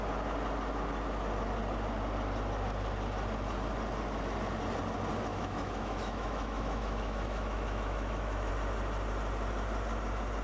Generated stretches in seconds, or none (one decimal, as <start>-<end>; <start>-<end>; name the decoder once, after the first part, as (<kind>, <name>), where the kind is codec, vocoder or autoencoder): 5.3-8.5 (autoencoder, DAC-VAE)